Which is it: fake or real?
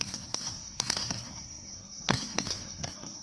fake